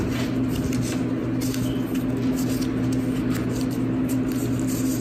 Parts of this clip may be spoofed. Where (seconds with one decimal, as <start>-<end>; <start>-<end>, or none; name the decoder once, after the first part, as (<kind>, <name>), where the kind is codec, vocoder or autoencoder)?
none